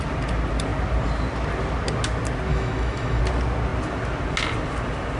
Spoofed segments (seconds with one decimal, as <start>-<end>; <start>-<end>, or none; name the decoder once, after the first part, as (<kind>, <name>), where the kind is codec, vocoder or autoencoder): 2.5-3.2 (autoencoder, DAC-VAE)